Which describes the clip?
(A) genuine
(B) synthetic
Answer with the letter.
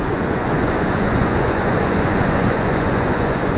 B